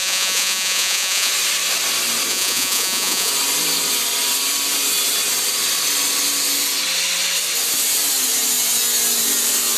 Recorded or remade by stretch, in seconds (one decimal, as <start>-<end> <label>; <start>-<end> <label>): 0.0-1.3 remade; 1.3-2.3 recorded; 2.3-3.3 remade; 3.3-9.8 recorded